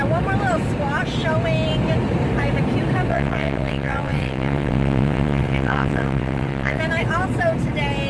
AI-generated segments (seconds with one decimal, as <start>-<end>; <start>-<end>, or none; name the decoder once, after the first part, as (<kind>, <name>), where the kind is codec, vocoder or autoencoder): 3.1-6.8 (vocoder, WaveNeXt)